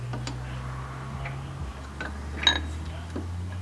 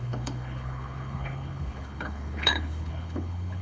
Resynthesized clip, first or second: second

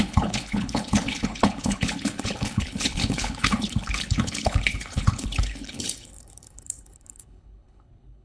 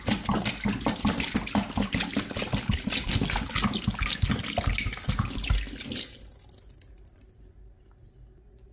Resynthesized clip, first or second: first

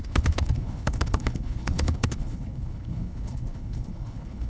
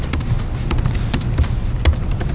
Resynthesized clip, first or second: first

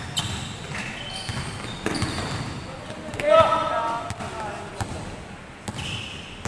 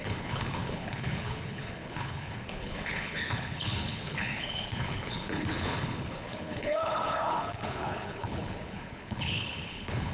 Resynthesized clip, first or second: second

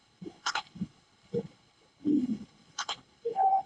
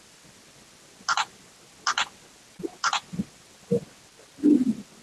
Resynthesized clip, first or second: first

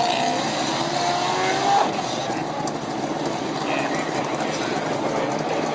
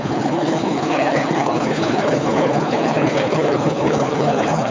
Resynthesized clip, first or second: second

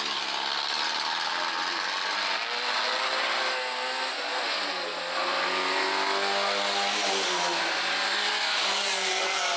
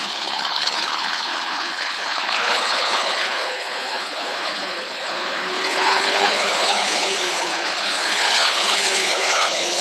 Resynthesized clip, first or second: second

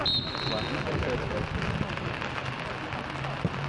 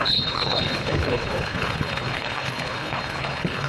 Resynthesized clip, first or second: second